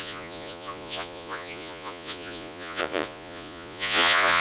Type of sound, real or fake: fake